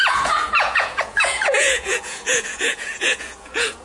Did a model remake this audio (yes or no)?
yes